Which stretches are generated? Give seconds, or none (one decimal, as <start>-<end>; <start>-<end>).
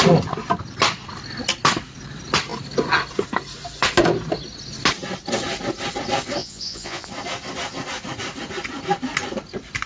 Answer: 6.4-7.1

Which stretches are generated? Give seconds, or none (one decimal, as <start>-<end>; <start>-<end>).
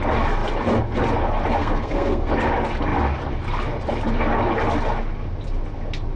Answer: 1.6-2.3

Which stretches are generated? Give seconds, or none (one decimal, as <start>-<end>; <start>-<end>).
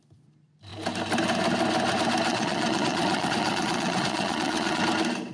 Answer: 2.3-4.8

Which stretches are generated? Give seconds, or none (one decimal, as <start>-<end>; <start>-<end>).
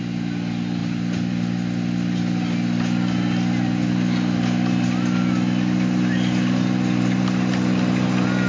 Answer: none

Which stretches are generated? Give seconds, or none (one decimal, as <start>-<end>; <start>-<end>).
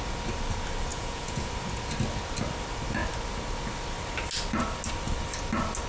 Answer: 0.9-1.5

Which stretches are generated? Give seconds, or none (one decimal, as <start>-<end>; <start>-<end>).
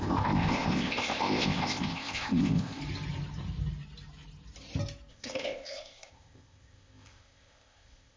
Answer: 0.0-2.8; 5.1-8.2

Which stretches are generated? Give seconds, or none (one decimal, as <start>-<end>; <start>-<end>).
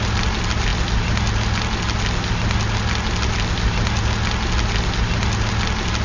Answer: none